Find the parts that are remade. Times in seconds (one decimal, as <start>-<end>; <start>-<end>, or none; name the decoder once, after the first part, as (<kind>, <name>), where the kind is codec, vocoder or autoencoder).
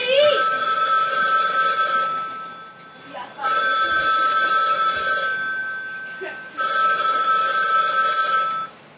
none